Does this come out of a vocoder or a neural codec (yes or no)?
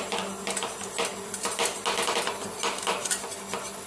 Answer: no